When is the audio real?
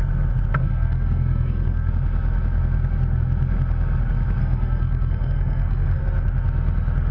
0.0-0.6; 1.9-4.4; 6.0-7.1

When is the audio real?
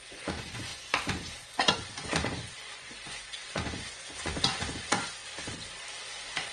5.2-6.0